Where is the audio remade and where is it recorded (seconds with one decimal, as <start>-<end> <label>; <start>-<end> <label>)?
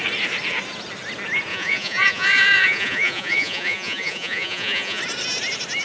0.0-1.5 recorded; 1.5-5.0 remade; 5.0-5.8 recorded